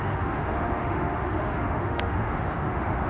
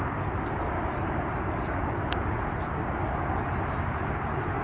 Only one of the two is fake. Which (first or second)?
first